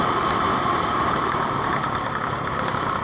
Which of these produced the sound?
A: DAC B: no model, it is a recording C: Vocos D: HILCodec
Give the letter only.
B